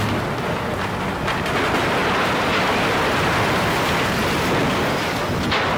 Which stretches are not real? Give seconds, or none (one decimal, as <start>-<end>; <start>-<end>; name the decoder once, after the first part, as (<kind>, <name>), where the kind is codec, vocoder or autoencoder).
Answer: 2.0-5.8 (vocoder, BigVGAN v2)